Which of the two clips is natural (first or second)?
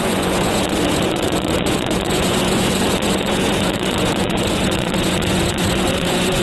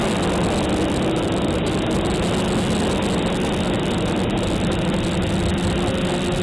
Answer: second